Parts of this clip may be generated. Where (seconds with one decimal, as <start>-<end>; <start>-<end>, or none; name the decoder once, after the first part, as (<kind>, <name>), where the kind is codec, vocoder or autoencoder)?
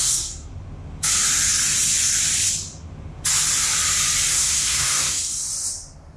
0.0-0.5 (codec, SNAC); 4.3-5.4